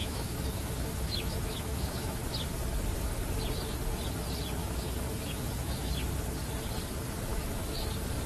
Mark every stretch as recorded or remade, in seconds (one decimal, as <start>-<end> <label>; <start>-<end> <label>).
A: 0.0-2.2 remade; 2.2-4.6 recorded; 4.6-5.9 remade; 5.9-7.3 recorded; 7.3-7.9 remade; 7.9-8.3 recorded